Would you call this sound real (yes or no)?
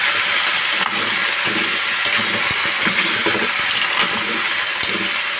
yes